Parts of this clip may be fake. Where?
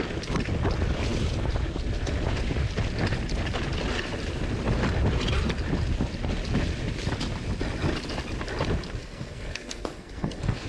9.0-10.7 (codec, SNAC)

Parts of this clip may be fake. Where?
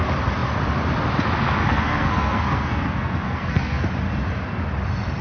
1.7-3.8 (codec, SNAC)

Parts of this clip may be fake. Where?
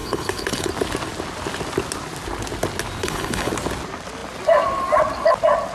0.0-0.7 (codec, HILCodec); 3.0-3.5